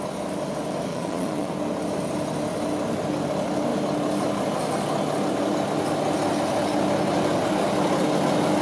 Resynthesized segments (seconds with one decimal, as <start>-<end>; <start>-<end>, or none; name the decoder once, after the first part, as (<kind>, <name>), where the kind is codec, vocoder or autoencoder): 0.9-1.5 (vocoder, Vocos)